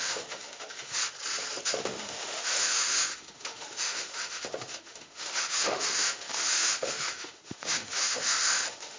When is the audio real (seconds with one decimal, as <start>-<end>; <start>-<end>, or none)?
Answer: 1.0-1.6